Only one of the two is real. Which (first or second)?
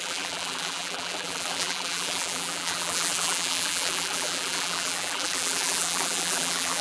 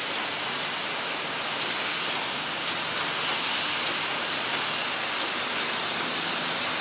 second